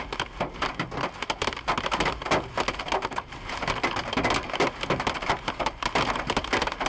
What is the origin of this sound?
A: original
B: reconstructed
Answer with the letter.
A